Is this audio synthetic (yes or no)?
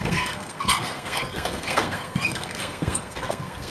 yes